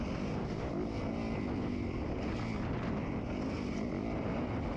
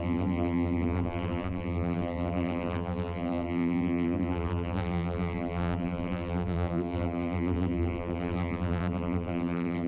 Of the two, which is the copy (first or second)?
second